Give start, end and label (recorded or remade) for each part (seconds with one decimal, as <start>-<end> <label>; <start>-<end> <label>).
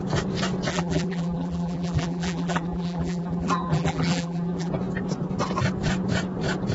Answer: 0.0-0.7 recorded; 0.7-4.7 remade; 4.7-6.7 recorded